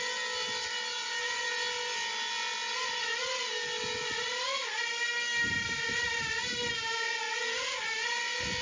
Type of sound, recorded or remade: recorded